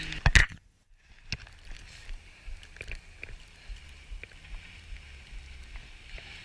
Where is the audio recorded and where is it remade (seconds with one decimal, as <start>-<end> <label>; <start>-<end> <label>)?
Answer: 0.0-0.4 recorded; 0.4-1.1 remade; 1.1-6.4 recorded